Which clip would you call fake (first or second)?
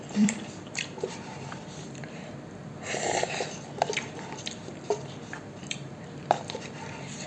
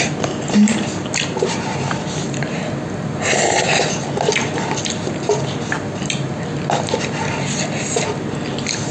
first